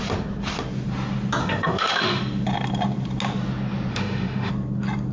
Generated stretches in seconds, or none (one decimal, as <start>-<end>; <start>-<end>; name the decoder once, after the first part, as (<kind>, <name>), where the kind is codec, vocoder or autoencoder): 1.4-2.2 (autoencoder, DAC-VAE); 3.9-4.5